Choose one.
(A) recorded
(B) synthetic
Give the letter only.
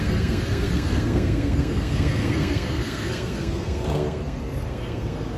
B